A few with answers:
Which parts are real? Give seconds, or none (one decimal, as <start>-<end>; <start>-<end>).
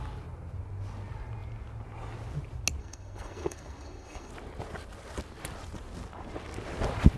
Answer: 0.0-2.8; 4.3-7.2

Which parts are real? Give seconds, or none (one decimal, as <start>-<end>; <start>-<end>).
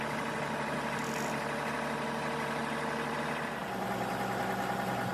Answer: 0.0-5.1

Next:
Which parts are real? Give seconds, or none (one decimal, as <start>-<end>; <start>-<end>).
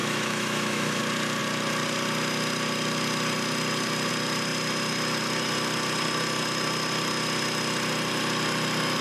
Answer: 1.0-9.0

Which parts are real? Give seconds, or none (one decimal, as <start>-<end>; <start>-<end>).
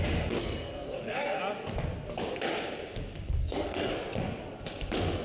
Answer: 0.0-0.4; 1.4-3.4; 3.9-5.2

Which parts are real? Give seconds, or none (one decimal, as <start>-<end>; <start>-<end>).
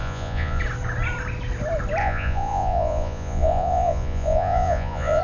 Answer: 0.6-2.0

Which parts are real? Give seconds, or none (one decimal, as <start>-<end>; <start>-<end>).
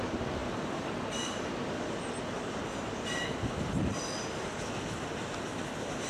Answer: 0.0-6.1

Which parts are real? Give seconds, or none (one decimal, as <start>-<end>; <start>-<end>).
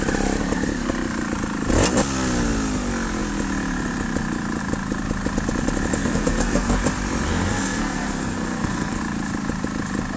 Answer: 0.0-6.0; 6.8-7.3; 9.0-10.2